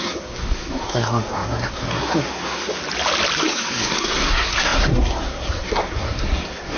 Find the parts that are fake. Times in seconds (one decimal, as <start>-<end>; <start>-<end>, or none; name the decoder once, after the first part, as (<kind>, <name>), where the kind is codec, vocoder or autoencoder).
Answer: 0.0-2.8 (codec, SNAC); 3.4-6.8